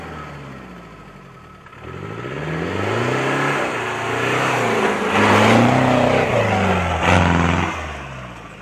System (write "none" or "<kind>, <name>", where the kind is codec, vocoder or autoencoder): none